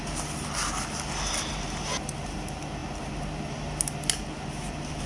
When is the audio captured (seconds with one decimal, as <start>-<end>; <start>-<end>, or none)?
0.0-5.1